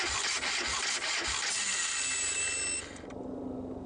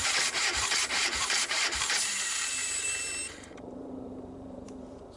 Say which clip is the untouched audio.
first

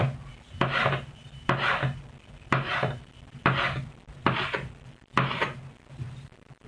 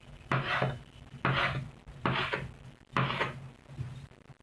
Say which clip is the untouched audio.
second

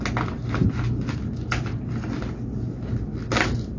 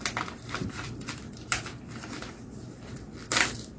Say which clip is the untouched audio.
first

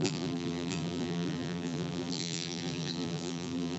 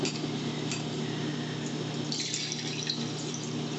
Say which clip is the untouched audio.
second